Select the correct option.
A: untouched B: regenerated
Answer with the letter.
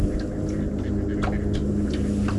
A